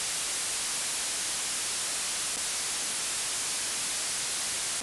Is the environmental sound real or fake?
real